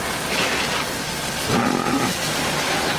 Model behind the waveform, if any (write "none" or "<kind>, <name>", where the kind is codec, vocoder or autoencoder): none